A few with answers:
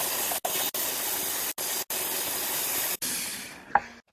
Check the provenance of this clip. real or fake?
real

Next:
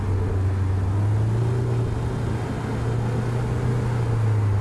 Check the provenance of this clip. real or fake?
real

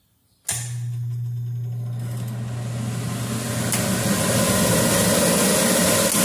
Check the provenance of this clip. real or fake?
real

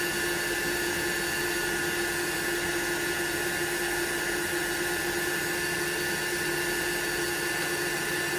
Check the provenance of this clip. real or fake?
real